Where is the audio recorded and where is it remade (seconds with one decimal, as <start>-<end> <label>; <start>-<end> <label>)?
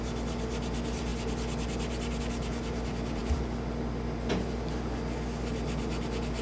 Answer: 0.0-6.4 recorded